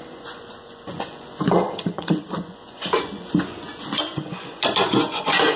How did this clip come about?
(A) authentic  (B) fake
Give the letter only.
B